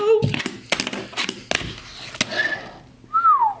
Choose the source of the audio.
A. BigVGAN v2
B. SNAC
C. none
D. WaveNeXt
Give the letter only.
C